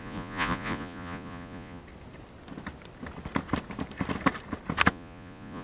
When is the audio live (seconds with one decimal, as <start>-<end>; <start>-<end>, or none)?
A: 1.8-4.9